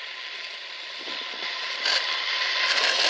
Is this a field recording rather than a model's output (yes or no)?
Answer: yes